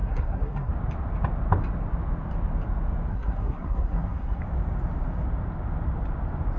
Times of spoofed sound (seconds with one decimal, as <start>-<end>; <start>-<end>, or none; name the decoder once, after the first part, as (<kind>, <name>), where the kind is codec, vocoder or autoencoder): 0.0-0.7 (codec, SNAC); 3.1-4.4